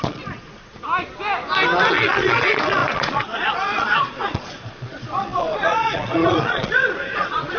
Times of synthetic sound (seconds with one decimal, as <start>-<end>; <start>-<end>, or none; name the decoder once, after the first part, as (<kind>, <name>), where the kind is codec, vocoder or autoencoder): 0.0-0.7 (vocoder, Vocos); 1.9-7.6

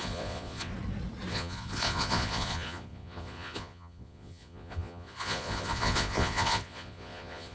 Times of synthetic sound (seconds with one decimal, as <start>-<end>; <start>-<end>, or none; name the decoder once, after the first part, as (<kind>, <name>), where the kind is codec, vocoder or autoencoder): 0.0-0.7 (vocoder, Vocos); 1.3-7.5

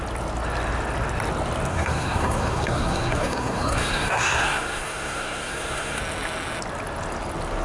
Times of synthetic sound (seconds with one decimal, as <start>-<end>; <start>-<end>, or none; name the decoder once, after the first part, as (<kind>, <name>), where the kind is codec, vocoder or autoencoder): 1.7-6.0 (codec, SNAC)